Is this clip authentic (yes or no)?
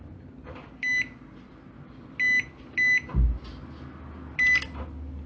yes